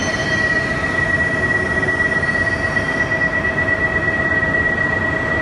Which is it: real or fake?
real